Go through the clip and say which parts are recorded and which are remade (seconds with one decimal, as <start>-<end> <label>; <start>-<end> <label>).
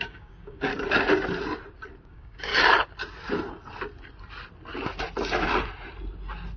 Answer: 0.0-0.7 remade; 0.7-2.1 recorded; 2.1-2.5 remade; 2.5-6.6 recorded